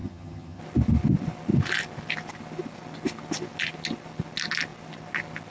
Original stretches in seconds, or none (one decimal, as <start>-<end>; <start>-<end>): 0.6-5.5